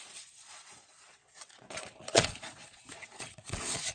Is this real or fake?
fake